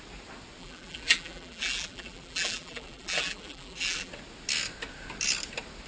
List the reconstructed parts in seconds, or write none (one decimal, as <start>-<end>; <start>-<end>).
0.6-4.1